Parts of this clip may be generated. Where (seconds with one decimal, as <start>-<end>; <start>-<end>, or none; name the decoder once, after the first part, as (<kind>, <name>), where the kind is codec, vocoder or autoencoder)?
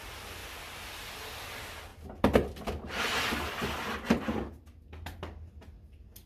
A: none